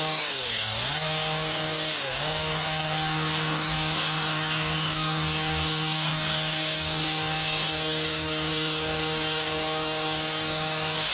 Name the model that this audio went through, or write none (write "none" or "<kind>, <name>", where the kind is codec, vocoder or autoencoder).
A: codec, DAC